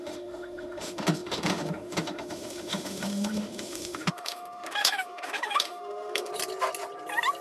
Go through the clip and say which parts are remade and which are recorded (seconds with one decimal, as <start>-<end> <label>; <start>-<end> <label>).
0.0-6.3 remade; 6.3-7.4 recorded